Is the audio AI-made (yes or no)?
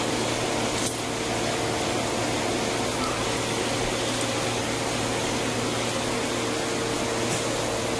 no